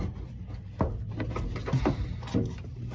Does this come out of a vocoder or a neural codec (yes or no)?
no